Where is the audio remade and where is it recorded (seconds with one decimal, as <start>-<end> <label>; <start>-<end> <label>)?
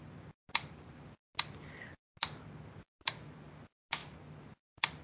0.0-5.0 recorded